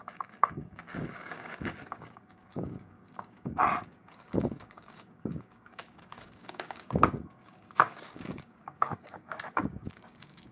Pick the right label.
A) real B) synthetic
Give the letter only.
B